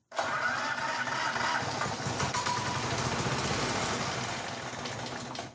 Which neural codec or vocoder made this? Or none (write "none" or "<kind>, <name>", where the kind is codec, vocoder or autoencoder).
none